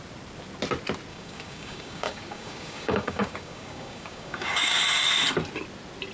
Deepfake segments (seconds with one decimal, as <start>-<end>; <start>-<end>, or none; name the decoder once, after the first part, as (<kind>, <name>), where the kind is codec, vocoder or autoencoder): 1.1-4.8 (codec, DAC)